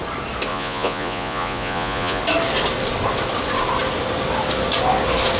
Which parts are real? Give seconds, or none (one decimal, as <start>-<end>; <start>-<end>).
0.0-0.5; 2.2-5.4